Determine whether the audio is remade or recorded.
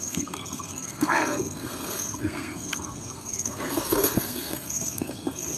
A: remade